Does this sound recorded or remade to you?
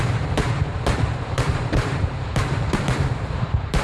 remade